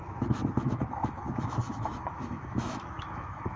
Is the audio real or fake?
fake